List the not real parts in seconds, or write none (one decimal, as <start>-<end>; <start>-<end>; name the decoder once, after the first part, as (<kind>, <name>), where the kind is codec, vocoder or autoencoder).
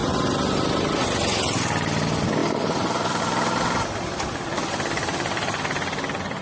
none